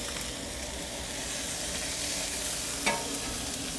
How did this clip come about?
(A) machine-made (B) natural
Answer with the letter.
B